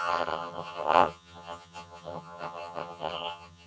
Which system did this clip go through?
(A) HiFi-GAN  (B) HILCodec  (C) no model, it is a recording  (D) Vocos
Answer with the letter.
A